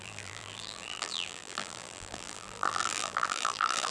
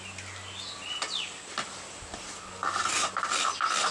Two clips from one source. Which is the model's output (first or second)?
first